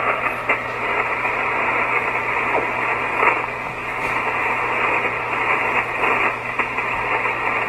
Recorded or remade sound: recorded